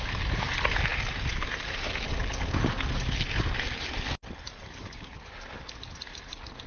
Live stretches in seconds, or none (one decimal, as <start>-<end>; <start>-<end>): 0.0-6.7

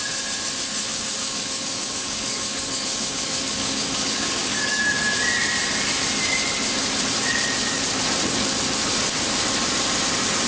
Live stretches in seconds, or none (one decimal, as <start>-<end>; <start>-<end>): 0.0-0.9; 4.9-10.5

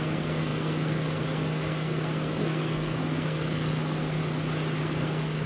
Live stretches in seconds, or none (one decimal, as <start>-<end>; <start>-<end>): 4.2-4.8

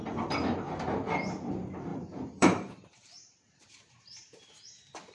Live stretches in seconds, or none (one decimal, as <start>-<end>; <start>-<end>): 0.0-1.9; 4.5-5.1

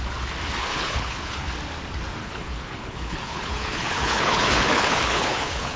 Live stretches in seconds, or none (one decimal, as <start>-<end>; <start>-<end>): 0.0-0.6; 1.5-2.2

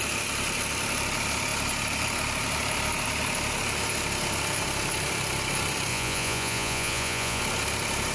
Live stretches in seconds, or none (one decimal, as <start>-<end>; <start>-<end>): 0.0-5.9; 7.4-8.1

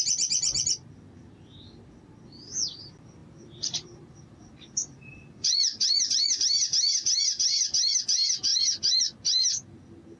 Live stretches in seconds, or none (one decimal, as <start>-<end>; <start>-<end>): 0.0-3.2; 6.1-10.2